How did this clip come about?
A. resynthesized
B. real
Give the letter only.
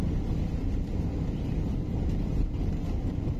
B